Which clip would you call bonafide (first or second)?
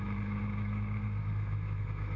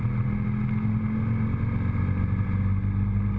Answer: second